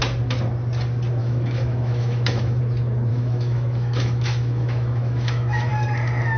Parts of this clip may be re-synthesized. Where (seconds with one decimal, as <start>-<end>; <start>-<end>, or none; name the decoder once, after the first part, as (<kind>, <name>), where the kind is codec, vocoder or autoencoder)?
1.2-2.6 (autoencoder, DAC-VAE); 3.1-5.7

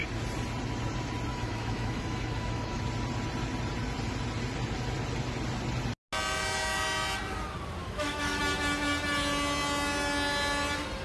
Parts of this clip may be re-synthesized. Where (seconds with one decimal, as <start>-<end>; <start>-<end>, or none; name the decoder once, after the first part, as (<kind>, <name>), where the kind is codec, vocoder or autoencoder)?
1.3-2.8 (autoencoder, DAC-VAE); 7.8-8.4

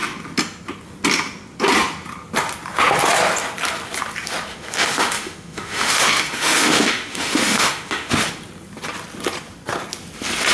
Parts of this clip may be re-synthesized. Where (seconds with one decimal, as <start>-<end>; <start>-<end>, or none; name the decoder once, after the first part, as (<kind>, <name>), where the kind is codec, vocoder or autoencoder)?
4.5-8.1 (autoencoder, DAC-VAE)

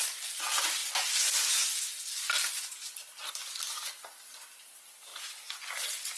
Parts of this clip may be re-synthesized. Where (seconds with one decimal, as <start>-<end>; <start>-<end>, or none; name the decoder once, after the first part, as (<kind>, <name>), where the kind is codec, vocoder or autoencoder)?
none